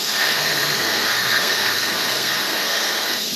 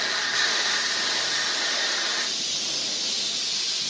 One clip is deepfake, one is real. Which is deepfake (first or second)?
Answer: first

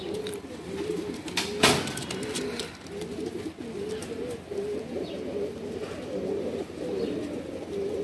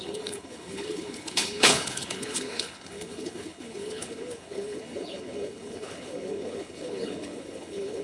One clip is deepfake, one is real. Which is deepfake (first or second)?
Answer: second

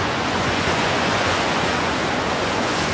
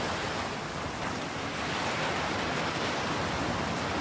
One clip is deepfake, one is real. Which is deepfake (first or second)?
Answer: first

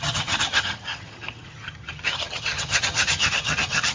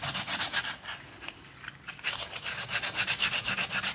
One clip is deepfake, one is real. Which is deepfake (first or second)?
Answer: first